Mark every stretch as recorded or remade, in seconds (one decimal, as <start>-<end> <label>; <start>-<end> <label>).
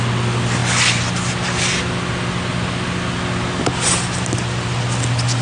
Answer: 0.0-5.4 recorded